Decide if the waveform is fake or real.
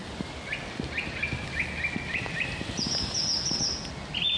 real